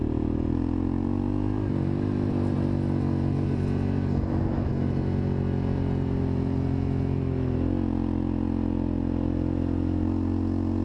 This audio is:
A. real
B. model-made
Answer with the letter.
A